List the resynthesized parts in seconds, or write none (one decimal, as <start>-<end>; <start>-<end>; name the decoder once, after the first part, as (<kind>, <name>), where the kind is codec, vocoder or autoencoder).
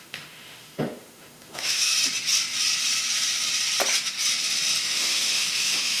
0.0-1.9 (autoencoder, DAC-VAE); 4.8-6.0